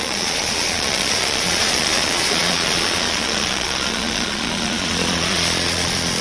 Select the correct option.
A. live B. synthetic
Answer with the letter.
B